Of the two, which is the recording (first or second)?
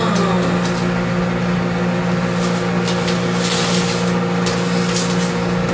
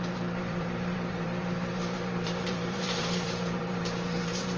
first